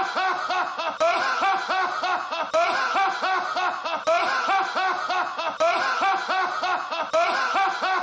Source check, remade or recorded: recorded